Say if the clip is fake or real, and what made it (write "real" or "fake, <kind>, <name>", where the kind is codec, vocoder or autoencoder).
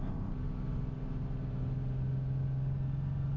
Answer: real